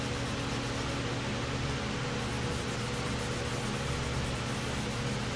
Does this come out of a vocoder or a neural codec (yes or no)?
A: no